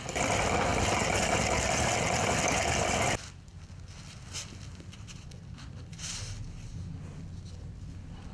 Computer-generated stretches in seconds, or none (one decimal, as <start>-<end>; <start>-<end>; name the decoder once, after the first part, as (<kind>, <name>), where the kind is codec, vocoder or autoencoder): none